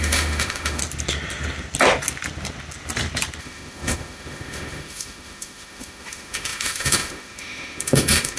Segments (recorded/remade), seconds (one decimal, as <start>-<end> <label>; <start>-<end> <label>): 0.0-0.8 remade; 0.8-3.4 recorded; 3.4-8.4 remade